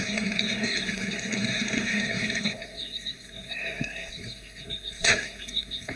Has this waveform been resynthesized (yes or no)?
yes